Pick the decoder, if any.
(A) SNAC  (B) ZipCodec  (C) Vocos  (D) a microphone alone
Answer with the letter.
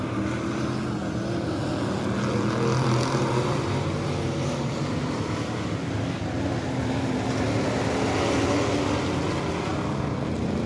D